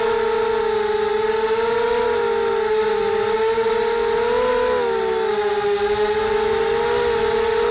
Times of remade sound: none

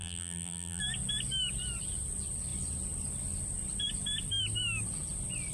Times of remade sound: 0.0-0.8 (vocoder, BigVGAN v2)